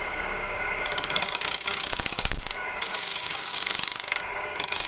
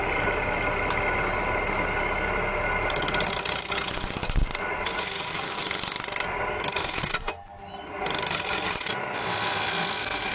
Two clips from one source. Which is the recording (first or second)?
second